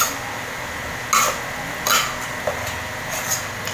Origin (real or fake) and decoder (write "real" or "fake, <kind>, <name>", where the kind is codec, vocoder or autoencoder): real